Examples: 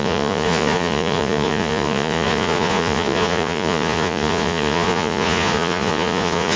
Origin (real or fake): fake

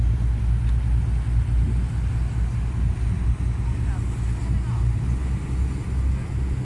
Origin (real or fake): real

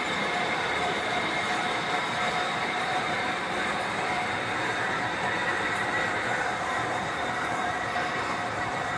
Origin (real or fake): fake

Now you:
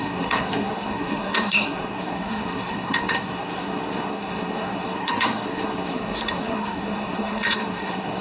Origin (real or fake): fake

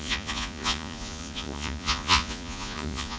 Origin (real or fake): fake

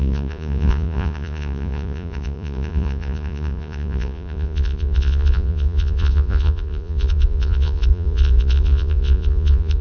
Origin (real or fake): fake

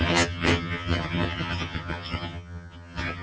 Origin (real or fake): fake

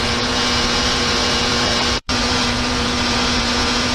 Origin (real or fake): fake